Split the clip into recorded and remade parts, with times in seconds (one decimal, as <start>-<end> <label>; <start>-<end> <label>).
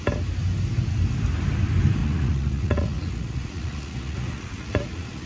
0.0-2.0 recorded; 2.0-5.3 remade